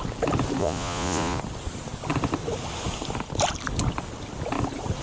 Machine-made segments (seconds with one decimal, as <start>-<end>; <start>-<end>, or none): 0.6-1.4